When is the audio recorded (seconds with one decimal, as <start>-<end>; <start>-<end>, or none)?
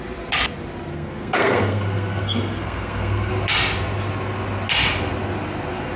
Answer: 0.0-0.9; 3.3-6.0